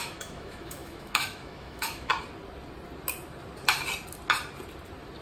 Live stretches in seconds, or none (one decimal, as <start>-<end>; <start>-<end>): 2.1-5.2